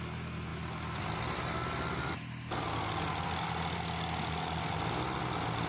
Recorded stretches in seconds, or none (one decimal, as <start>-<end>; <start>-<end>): 0.0-5.7

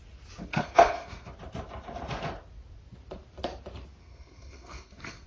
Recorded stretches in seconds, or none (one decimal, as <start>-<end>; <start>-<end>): 0.0-0.5; 1.3-4.0

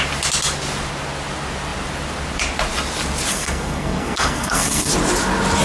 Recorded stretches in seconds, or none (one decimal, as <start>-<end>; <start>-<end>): 0.0-3.3; 4.9-5.6

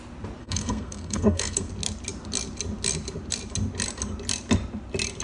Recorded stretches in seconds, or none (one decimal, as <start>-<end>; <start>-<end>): 0.0-0.4; 1.7-5.2